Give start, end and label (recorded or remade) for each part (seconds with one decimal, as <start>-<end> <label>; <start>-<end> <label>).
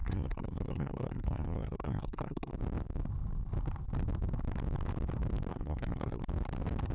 0.0-2.5 remade; 2.5-5.5 recorded; 5.5-6.2 remade; 6.2-6.9 recorded